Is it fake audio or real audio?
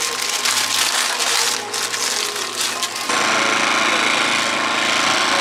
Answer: real